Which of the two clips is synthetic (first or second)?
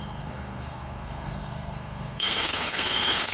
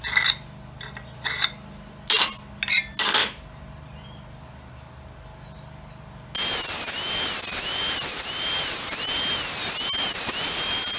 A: first